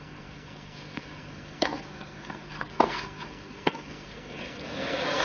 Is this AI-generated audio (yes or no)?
yes